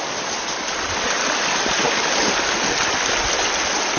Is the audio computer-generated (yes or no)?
no